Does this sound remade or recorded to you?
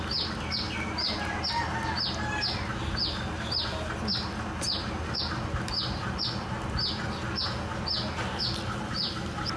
recorded